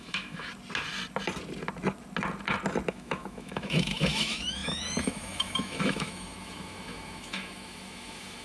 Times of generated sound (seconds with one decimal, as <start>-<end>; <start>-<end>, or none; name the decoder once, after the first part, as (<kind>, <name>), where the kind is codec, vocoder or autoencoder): 0.0-0.5 (autoencoder, DAC-VAE); 2.9-8.4